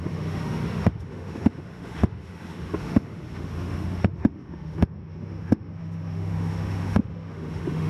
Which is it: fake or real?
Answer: fake